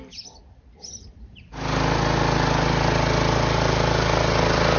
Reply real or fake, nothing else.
real